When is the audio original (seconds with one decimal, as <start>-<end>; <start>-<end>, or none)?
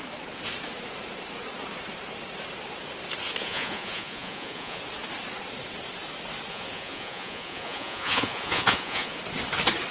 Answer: 0.0-3.4; 4.8-6.5; 9.2-9.9